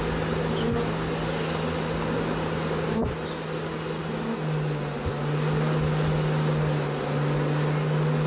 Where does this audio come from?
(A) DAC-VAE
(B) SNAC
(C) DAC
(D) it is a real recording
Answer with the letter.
D